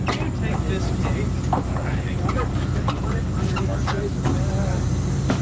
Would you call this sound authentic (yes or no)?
yes